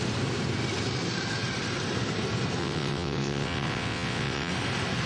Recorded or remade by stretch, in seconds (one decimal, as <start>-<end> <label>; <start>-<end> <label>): 0.0-2.6 recorded; 2.6-4.5 remade; 4.5-5.1 recorded